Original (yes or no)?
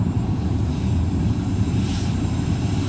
no